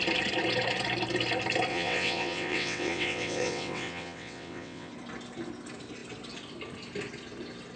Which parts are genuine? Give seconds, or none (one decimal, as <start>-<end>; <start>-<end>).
0.0-1.7; 4.9-7.8